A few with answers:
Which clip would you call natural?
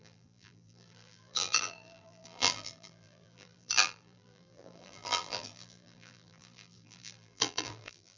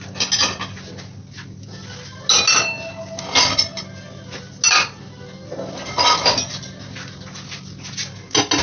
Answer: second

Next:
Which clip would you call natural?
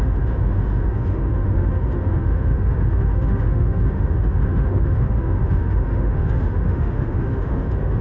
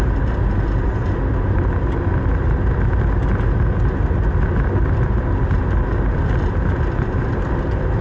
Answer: second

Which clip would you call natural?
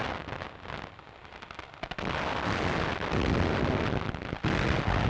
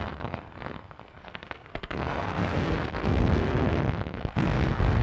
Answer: first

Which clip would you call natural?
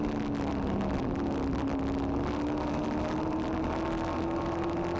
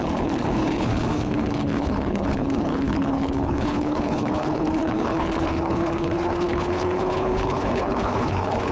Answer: first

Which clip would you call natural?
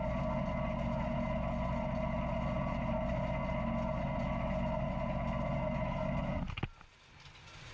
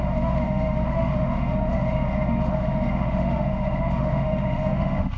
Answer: first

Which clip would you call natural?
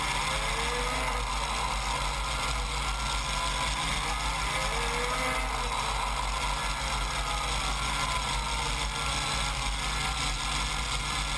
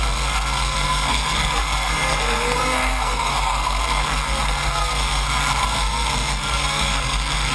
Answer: first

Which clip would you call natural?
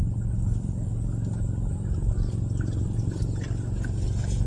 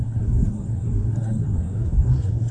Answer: first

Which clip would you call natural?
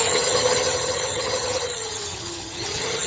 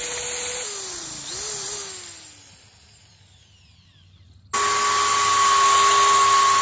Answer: second